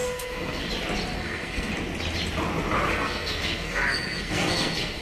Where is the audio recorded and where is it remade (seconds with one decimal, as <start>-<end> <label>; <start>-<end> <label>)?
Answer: 0.0-0.7 remade; 0.7-1.2 recorded; 1.2-1.7 remade; 1.7-2.9 recorded; 2.9-5.0 remade